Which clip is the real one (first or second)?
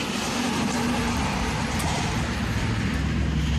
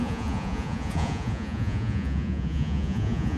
first